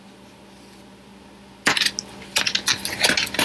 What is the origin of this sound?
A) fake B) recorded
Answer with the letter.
B